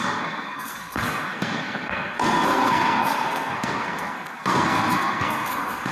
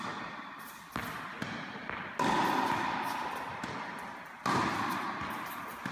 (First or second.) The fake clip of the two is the first